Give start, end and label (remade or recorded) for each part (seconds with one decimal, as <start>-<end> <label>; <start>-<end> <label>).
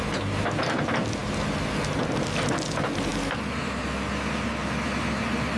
0.0-5.6 recorded